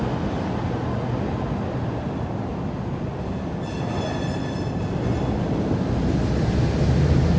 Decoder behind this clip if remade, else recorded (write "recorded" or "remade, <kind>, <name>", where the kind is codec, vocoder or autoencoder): recorded